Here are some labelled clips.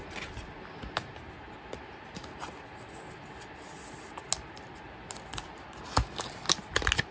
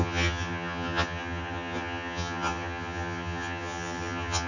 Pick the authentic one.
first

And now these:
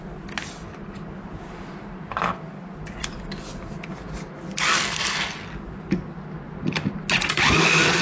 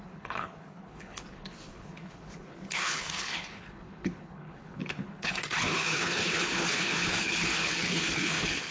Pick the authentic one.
first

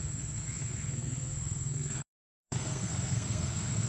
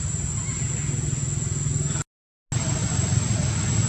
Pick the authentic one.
second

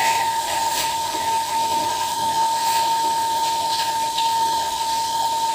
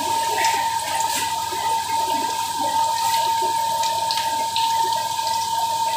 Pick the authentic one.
second